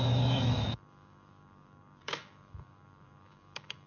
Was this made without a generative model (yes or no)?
no